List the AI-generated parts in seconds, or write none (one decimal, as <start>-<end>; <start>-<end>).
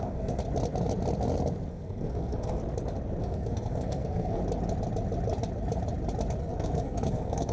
0.0-0.4; 1.7-2.6; 3.2-4.4; 6.4-7.5